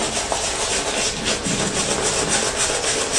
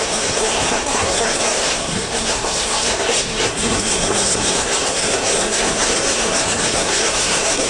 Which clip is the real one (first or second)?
first